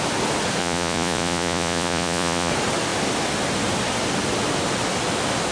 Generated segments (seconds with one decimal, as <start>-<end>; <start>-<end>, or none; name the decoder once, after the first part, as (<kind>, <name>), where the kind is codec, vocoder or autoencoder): 0.6-2.5 (vocoder, Vocos)